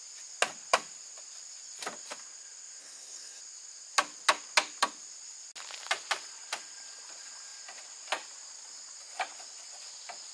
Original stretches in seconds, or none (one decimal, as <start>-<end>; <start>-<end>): 0.0-2.8; 3.4-10.3